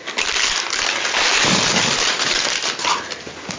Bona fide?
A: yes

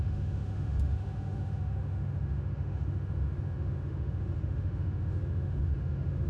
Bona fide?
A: no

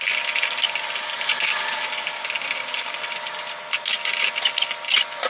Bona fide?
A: yes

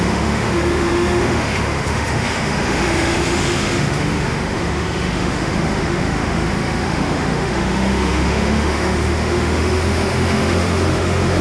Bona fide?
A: no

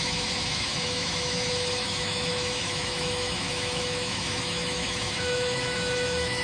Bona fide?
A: no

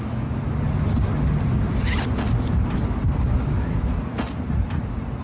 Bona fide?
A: yes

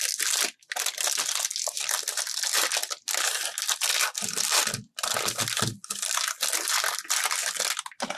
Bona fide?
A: yes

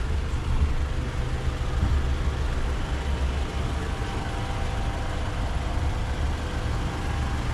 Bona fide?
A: yes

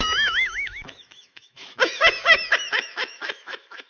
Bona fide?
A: no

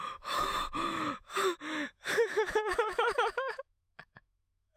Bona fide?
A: no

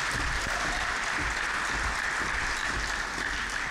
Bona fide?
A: yes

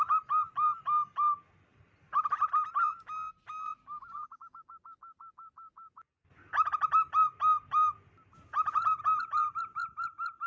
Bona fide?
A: yes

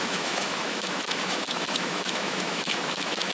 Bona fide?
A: no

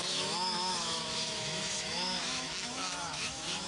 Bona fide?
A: no